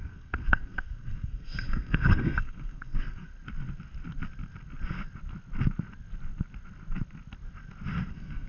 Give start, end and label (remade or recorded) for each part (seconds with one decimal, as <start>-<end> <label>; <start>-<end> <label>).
0.0-3.3 remade; 3.3-8.1 recorded; 8.1-8.5 remade